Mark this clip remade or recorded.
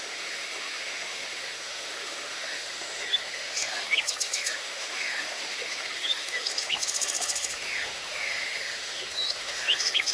remade